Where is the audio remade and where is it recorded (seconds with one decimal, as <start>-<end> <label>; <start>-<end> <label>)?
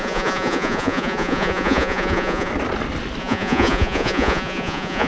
0.0-2.5 remade; 2.5-3.2 recorded; 3.2-5.1 remade